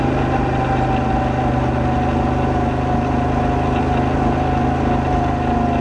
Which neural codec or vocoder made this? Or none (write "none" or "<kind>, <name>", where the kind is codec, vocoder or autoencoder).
none